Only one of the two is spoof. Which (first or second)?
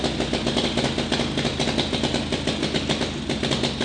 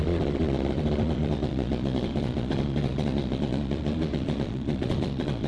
second